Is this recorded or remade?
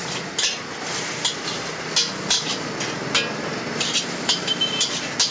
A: recorded